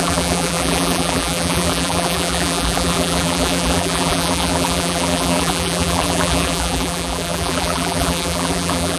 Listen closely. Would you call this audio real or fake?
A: fake